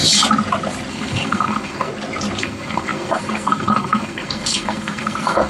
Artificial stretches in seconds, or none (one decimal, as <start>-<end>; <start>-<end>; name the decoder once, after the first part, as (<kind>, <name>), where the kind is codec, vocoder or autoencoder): 0.9-1.9 (codec, SNAC); 2.4-5.5